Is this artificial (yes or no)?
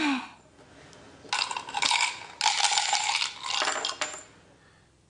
no